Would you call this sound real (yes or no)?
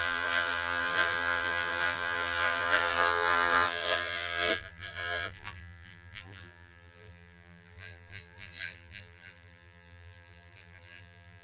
no